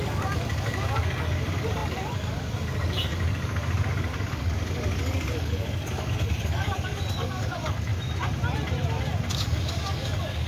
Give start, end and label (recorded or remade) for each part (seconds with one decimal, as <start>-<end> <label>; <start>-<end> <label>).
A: 0.0-7.9 remade; 7.9-9.3 recorded; 9.3-10.5 remade